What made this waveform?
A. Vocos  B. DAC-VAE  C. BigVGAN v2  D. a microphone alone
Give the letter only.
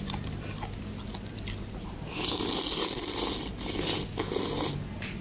D